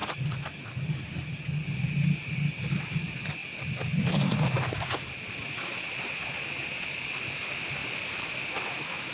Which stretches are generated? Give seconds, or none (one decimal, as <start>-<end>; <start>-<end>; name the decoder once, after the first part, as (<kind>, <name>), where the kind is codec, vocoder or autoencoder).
7.8-8.4 (vocoder, BigVGAN v2)